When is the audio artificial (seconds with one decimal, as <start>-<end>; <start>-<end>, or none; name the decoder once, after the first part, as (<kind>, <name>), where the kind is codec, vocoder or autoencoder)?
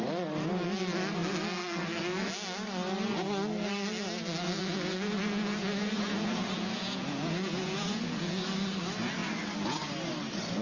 4.6-8.4 (vocoder, Vocos)